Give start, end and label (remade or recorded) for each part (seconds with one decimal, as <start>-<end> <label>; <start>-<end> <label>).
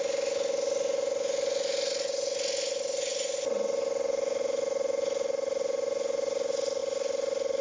0.0-7.6 recorded